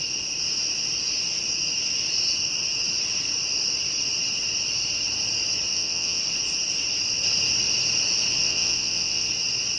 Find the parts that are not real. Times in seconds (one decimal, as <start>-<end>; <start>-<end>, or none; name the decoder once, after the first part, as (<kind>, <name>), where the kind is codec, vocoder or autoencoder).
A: 5.7-6.2 (vocoder, WaveNeXt); 8.4-9.3